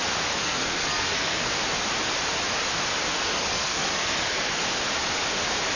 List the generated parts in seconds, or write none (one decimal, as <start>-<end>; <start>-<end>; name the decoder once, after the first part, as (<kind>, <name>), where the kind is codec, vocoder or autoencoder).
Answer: 0.4-1.5 (codec, SNAC); 3.1-4.6